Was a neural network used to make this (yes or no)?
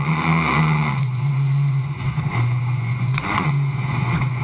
yes